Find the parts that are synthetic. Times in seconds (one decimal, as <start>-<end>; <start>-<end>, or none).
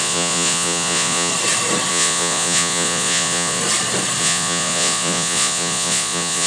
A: 0.0-1.3; 1.9-3.6; 4.2-6.5